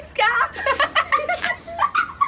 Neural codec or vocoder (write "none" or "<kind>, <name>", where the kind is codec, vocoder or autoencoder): none